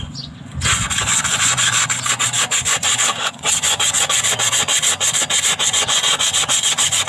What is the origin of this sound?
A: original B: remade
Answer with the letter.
B